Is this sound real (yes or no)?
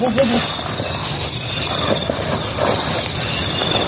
yes